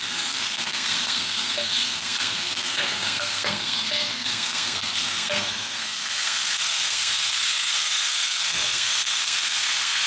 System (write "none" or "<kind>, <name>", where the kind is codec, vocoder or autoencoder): codec, SNAC